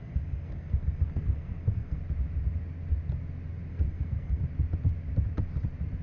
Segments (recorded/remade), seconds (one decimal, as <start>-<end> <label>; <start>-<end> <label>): 0.0-2.0 remade; 2.0-3.7 recorded; 3.7-4.4 remade; 4.4-6.0 recorded